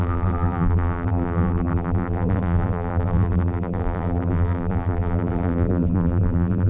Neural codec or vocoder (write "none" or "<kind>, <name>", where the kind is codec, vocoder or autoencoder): vocoder, BigVGAN v2